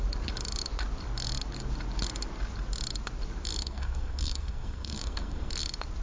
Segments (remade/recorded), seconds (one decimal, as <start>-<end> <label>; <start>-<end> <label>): 0.0-3.6 recorded; 3.6-5.5 remade; 5.5-6.0 recorded

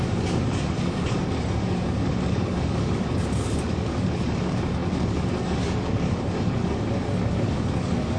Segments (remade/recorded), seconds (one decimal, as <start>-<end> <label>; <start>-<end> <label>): 0.0-8.2 remade

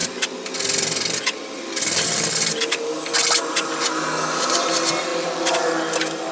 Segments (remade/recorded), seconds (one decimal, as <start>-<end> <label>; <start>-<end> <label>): 0.0-6.3 recorded